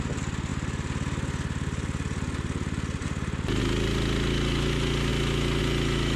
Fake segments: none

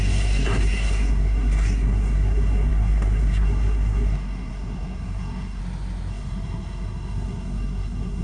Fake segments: 0.0-5.6 (codec, SNAC); 6.1-8.2

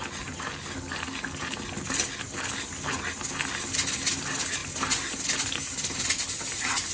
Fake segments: none

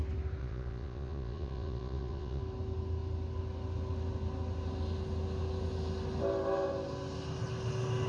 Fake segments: 0.4-2.4 (vocoder, Vocos)

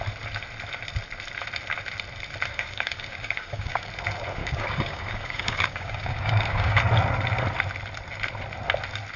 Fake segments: 2.5-3.9 (codec, DAC); 4.4-6.8

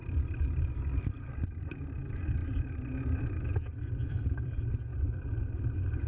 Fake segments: 0.0-2.4 (vocoder, BigVGAN v2); 3.8-6.1

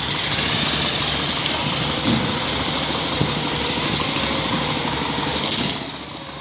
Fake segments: none

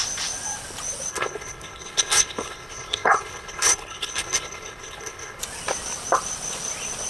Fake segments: 1.1-5.4 (codec, HILCodec)